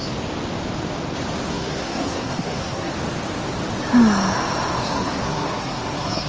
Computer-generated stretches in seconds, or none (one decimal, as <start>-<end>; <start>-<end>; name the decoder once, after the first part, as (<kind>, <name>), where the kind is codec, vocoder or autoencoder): 1.5-2.9 (codec, SNAC); 4.8-6.3

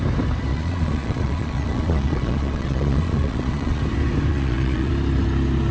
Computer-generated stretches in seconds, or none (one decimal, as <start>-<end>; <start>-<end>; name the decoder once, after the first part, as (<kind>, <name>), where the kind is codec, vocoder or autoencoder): 0.5-3.8 (vocoder, Vocos); 4.3-4.9

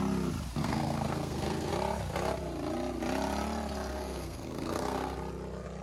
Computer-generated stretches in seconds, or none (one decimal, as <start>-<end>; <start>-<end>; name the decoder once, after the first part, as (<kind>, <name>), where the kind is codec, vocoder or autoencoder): 0.6-1.7 (codec, SNAC); 3.9-5.1